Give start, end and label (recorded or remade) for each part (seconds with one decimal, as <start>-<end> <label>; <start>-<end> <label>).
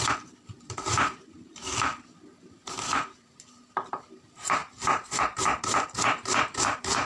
0.0-7.0 remade